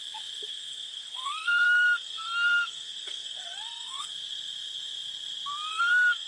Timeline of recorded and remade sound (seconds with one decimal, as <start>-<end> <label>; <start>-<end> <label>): 0.0-0.5 recorded; 0.5-4.1 remade; 4.1-5.7 recorded; 5.7-6.3 remade